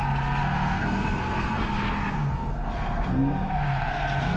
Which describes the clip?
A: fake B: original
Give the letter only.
A